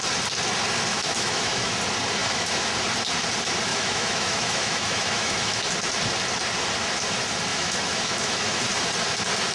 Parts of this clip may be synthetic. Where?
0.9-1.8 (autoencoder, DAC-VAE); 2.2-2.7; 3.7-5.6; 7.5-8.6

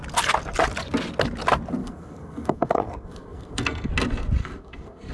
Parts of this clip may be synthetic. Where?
1.8-3.9 (codec, SNAC); 4.4-5.1

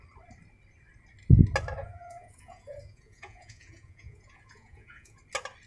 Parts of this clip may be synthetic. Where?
1.8-5.2 (vocoder, Vocos)

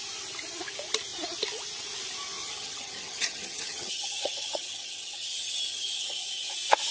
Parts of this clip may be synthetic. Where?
2.4-6.5 (vocoder, HiFi-GAN)

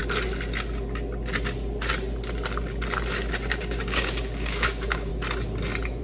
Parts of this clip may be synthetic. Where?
3.6-5.1 (codec, DAC)